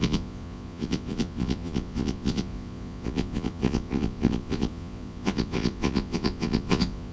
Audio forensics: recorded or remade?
remade